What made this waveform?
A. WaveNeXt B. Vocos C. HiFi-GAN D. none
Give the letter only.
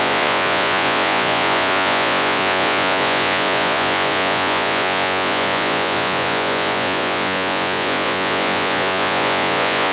B